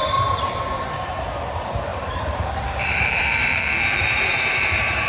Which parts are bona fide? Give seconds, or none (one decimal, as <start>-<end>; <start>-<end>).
1.2-1.9